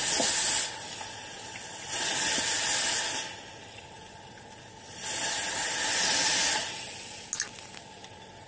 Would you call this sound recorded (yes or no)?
yes